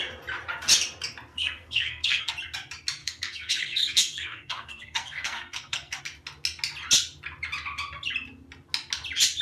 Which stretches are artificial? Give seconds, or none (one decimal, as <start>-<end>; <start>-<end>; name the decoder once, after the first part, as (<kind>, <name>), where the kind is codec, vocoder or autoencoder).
1.3-2.3 (codec, SNAC); 3.0-6.0